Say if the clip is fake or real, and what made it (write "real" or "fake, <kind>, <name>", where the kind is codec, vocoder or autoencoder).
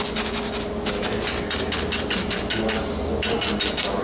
real